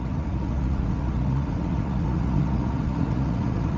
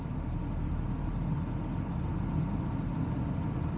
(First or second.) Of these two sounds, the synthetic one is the first